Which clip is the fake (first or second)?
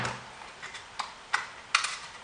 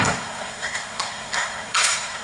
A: second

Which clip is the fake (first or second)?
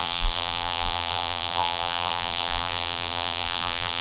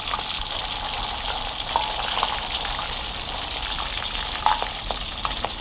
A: first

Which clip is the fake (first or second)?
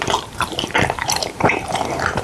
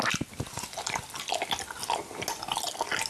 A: first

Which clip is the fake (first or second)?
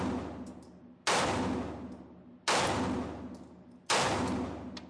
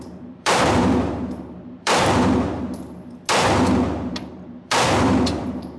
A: second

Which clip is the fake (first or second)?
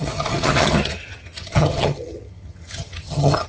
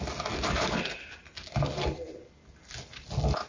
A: first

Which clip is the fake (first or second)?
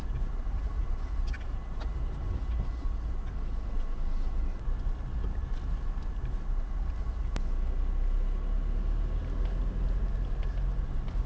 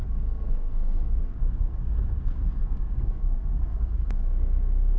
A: second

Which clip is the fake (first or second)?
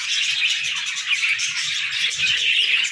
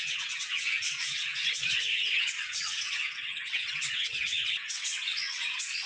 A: second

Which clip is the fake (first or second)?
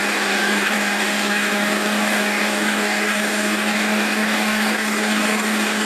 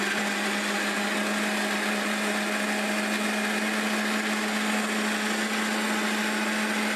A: first